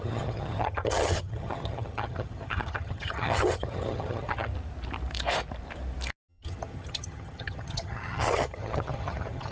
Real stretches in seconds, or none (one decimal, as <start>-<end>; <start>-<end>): 4.5-6.3